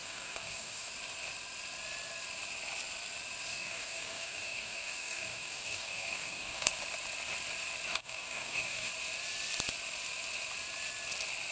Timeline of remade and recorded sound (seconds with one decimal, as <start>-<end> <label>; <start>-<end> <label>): 0.0-0.9 remade; 0.9-3.5 recorded; 3.5-6.7 remade; 6.7-7.9 recorded; 7.9-8.9 remade; 8.9-11.5 recorded